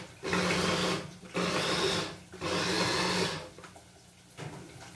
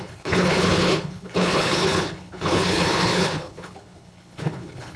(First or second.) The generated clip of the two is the second